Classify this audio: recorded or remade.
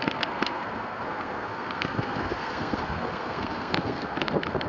remade